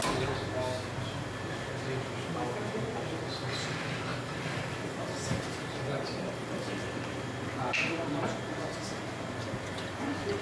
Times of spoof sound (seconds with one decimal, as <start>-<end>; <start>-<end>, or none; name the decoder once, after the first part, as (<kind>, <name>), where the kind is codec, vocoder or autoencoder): 4.1-6.6 (vocoder, BigVGAN v2)